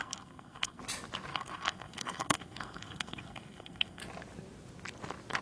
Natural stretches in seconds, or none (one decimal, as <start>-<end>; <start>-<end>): 0.8-1.3; 4.0-5.4